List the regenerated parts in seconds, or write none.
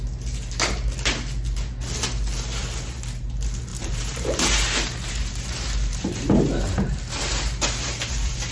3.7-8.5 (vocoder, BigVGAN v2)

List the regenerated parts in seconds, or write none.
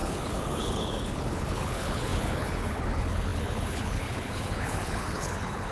0.0-5.7 (codec, HILCodec)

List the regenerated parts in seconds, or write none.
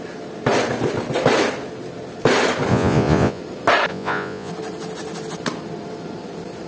2.7-3.4 (vocoder, Vocos); 3.9-4.5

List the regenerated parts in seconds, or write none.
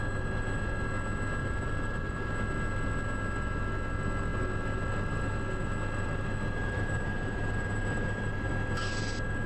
1.4-2.3 (vocoder, BigVGAN v2); 6.6-8.5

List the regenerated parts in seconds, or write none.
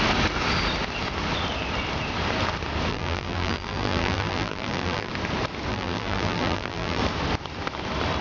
2.9-5.1 (vocoder, BigVGAN v2); 5.7-7.0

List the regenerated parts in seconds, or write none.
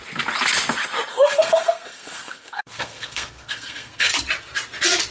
1.1-4.1 (codec, SNAC)